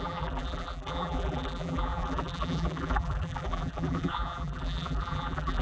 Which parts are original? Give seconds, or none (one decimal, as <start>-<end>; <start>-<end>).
none